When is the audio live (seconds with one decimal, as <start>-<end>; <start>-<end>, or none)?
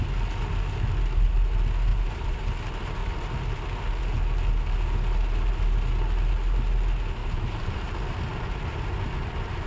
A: 0.0-1.9; 2.4-7.2; 7.8-9.7